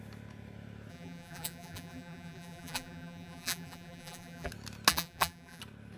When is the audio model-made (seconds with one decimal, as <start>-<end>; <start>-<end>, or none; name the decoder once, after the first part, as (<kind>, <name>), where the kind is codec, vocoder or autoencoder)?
0.9-4.5 (vocoder, BigVGAN v2); 4.9-5.6